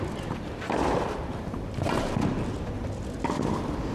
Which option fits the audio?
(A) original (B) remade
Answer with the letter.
A